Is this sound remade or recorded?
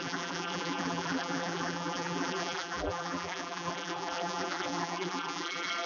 remade